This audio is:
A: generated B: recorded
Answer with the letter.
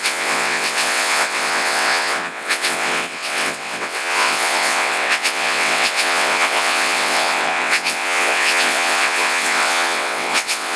A